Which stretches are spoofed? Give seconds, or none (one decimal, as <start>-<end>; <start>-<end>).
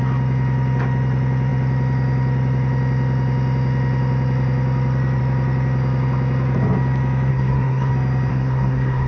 7.3-7.9; 8.3-9.1